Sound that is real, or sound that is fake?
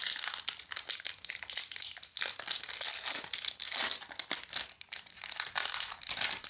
real